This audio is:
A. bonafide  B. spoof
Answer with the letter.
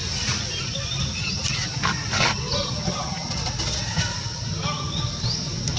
A